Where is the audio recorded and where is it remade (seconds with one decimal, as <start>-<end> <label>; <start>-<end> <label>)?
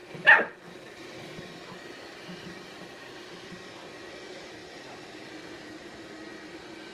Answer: 0.0-4.1 remade; 4.1-4.6 recorded; 4.6-5.3 remade; 5.3-6.9 recorded